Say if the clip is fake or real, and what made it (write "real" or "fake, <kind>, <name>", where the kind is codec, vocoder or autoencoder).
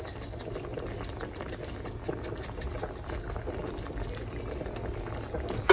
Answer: real